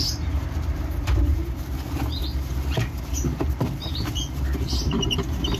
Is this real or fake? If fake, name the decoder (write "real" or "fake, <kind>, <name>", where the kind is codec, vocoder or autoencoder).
fake, vocoder, BigVGAN v2